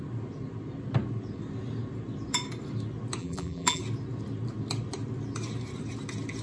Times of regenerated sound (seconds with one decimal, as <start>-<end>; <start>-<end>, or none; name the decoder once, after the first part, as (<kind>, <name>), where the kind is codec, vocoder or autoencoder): 3.2-3.8 (vocoder, BigVGAN v2)